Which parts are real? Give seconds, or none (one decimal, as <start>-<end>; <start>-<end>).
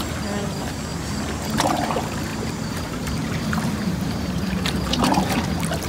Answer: 0.0-2.3; 5.5-5.9